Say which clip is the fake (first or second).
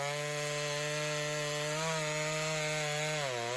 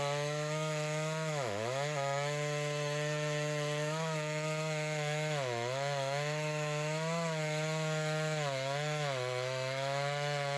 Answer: second